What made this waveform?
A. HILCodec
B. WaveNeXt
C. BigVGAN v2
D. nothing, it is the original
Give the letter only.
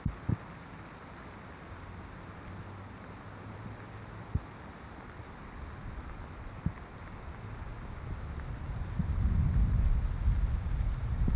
D